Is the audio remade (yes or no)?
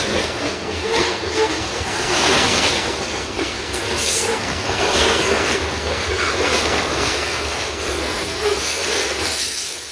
yes